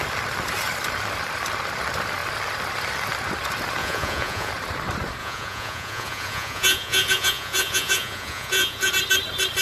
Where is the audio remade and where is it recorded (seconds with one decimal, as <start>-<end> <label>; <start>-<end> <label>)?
0.0-3.8 recorded; 3.8-4.5 remade; 4.5-5.2 recorded; 5.2-8.9 remade; 8.9-9.6 recorded